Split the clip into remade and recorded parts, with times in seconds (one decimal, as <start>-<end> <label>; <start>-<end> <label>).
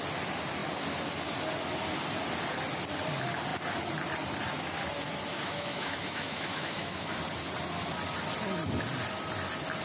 0.0-5.3 recorded; 5.3-7.2 remade; 7.2-9.8 recorded